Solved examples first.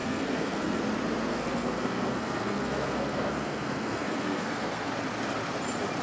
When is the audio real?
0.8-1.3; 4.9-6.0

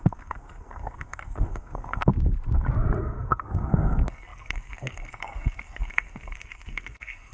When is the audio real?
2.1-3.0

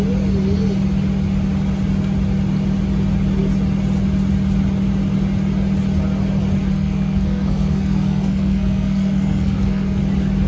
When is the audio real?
0.0-6.7; 10.0-10.5